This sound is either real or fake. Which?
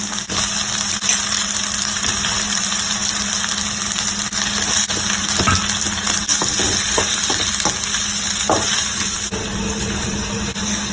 real